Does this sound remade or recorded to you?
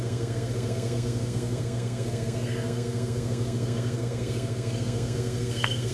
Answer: remade